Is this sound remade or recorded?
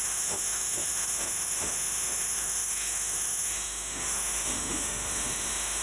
remade